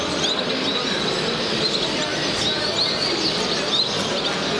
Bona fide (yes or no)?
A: yes